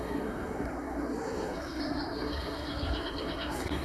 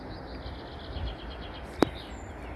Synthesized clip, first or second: first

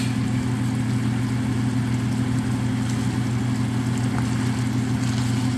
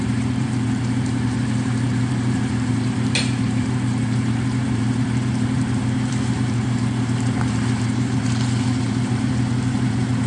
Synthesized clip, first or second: second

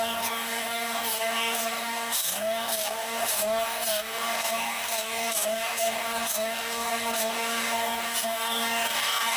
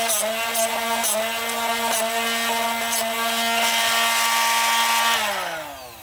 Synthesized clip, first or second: first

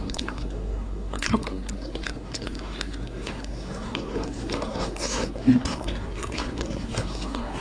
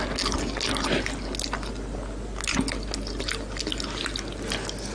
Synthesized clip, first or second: first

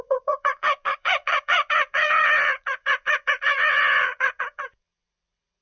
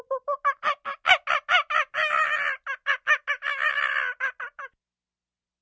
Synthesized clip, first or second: first